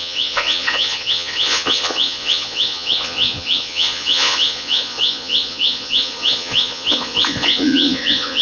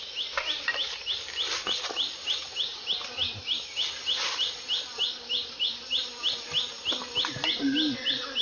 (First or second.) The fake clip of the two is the first